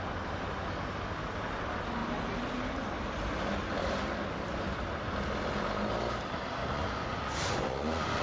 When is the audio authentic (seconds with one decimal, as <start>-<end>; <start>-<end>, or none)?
0.0-6.6